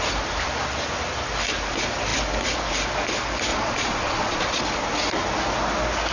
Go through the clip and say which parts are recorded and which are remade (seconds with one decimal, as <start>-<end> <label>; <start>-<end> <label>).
0.0-3.5 recorded; 3.5-4.6 remade; 4.6-6.1 recorded